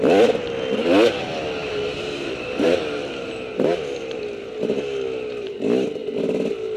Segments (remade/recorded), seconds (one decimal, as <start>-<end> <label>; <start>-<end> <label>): 0.0-1.6 recorded; 1.6-4.2 remade; 4.2-6.8 recorded